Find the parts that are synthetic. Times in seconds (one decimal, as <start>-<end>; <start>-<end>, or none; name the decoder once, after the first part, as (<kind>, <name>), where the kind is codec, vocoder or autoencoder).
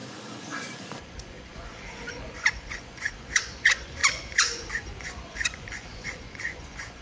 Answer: 0.0-7.0 (vocoder, Vocos)